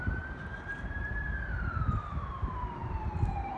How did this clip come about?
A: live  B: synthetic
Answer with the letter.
B